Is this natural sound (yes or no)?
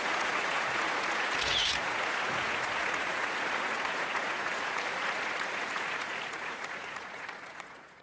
no